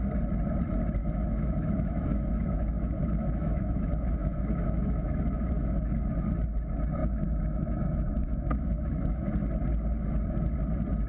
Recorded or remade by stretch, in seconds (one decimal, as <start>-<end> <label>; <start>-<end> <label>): 0.0-1.0 recorded; 1.0-6.1 remade; 6.1-7.0 recorded; 7.0-9.3 remade; 9.3-11.1 recorded